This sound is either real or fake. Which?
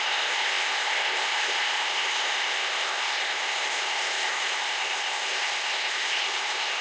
fake